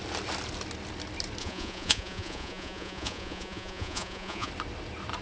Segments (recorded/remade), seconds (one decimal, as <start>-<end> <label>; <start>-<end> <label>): 0.0-1.4 recorded; 1.4-4.5 remade; 4.5-5.2 recorded